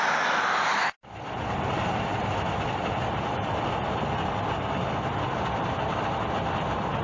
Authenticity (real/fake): real